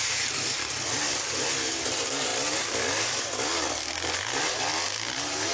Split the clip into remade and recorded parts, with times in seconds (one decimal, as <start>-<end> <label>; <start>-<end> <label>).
0.0-2.3 remade; 2.3-5.1 recorded; 5.1-5.5 remade